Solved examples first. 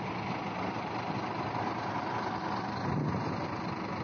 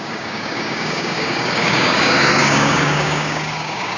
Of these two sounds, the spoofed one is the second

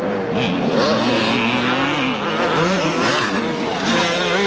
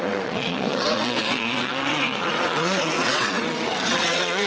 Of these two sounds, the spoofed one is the second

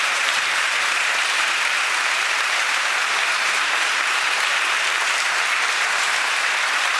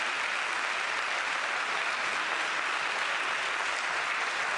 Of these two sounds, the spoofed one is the first